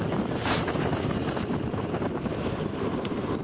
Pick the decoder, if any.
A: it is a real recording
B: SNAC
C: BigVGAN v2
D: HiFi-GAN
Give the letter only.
C